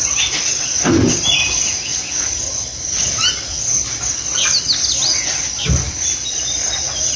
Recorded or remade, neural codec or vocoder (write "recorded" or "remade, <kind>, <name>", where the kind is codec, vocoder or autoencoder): recorded